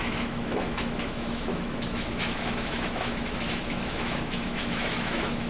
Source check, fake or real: fake